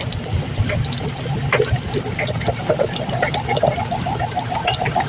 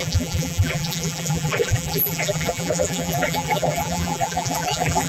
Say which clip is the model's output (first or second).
second